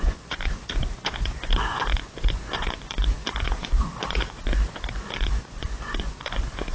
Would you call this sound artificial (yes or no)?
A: yes